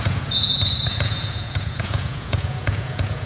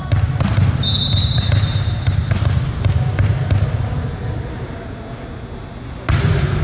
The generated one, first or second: first